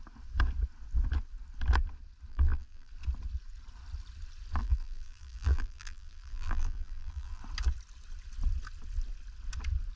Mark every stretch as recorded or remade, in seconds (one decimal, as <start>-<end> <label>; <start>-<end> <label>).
0.0-2.3 recorded; 2.3-2.9 remade; 2.9-4.6 recorded; 4.6-7.4 remade; 7.4-10.0 recorded